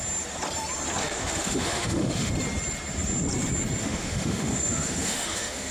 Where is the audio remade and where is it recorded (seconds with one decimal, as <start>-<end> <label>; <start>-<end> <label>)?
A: 0.0-1.0 recorded; 1.0-2.3 remade; 2.3-3.8 recorded; 3.8-5.7 remade